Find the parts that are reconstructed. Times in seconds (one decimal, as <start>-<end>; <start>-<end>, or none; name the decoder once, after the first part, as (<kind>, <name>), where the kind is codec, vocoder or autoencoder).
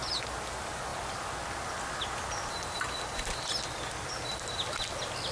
none